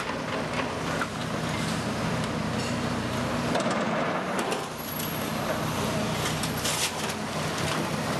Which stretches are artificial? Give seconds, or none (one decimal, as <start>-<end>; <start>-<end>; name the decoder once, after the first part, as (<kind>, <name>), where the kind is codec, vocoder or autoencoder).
none